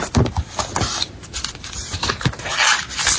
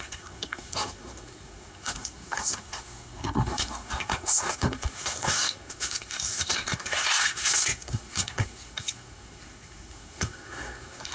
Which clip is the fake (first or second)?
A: second